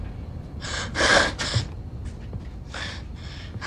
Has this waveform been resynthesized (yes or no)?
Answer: no